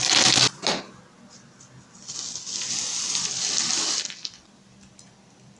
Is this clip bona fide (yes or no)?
yes